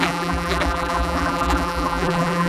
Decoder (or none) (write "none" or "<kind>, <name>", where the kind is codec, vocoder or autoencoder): vocoder, BigVGAN v2